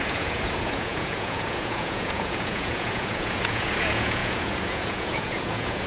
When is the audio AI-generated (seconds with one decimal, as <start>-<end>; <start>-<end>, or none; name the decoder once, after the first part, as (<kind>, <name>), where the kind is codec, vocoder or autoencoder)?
0.0-5.9 (vocoder, Vocos)